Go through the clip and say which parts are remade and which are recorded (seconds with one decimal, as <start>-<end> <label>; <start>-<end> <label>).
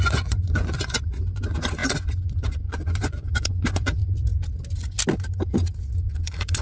0.0-4.0 remade; 4.0-5.9 recorded; 5.9-6.6 remade